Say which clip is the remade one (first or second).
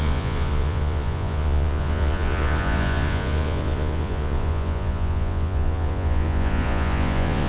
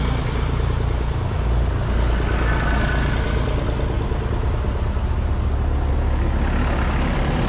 first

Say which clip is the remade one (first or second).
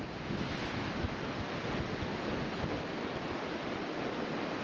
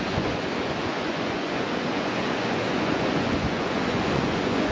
second